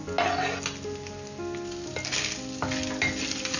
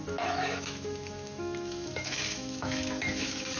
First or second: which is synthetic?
second